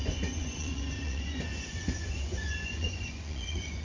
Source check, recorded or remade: remade